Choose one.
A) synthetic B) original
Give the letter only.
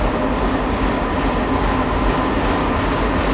B